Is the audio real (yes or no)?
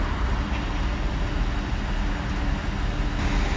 yes